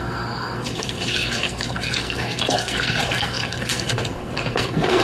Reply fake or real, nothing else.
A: fake